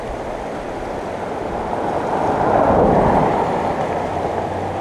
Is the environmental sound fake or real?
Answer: fake